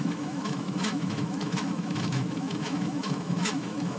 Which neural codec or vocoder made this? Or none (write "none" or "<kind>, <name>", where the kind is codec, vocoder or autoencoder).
autoencoder, DAC-VAE